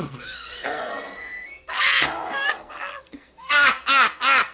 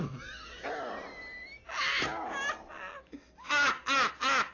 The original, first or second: second